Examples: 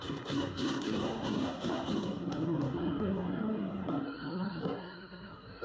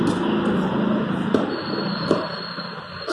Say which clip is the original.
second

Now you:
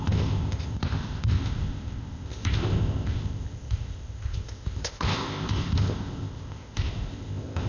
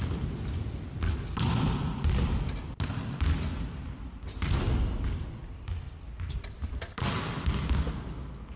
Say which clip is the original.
second